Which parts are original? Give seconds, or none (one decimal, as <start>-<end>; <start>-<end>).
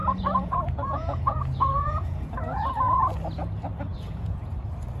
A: 3.0-3.9; 4.5-5.0